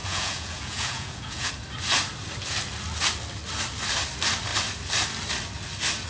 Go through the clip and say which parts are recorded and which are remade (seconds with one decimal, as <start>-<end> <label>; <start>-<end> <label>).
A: 0.0-1.5 remade; 1.5-6.1 recorded